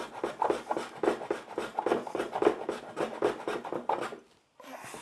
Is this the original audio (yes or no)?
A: yes